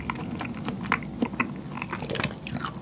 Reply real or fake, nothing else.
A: real